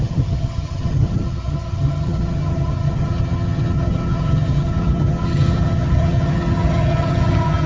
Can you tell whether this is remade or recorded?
remade